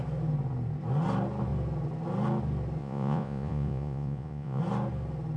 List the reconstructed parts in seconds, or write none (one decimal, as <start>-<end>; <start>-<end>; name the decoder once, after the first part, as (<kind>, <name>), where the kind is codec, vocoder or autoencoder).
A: 2.8-4.6 (vocoder, Vocos)